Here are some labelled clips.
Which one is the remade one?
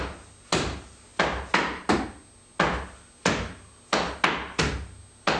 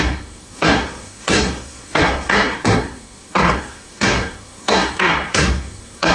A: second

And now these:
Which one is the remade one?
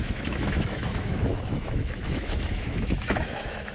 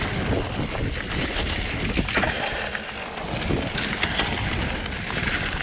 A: first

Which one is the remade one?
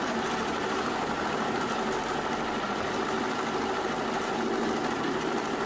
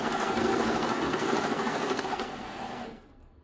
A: second